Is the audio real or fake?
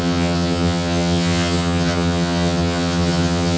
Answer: fake